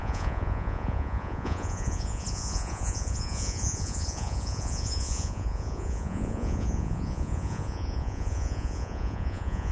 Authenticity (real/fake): fake